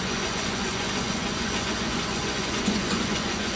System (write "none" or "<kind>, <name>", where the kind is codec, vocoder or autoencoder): vocoder, Vocos